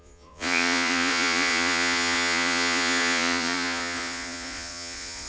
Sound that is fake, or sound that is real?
fake